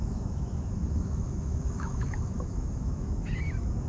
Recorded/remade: remade